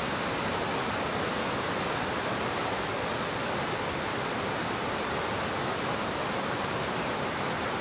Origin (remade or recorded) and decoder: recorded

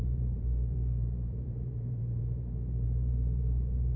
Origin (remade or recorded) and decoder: remade, vocoder, BigVGAN v2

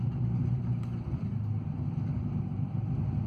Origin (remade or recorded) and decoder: remade, vocoder, BigVGAN v2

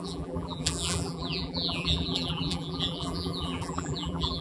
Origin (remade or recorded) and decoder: remade, vocoder, BigVGAN v2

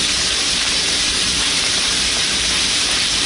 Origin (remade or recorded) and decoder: remade, vocoder, BigVGAN v2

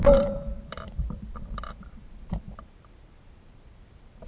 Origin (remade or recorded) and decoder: remade, vocoder, BigVGAN v2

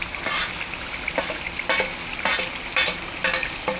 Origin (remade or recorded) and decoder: remade, vocoder, BigVGAN v2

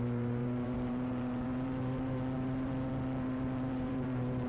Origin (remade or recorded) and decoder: remade, vocoder, BigVGAN v2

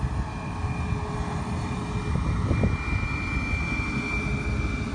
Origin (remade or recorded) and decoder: recorded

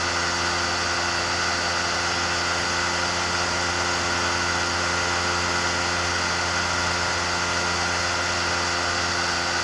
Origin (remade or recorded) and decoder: recorded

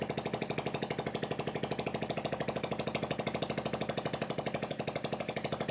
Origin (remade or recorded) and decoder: recorded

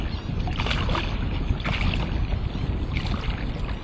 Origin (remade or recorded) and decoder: recorded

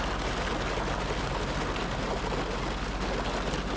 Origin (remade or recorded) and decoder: recorded